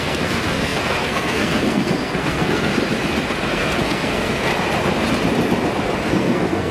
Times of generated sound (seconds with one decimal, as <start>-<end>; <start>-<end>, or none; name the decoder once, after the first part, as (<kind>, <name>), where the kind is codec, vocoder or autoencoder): 0.0-2.7 (codec, SNAC); 3.5-4.5; 6.1-6.7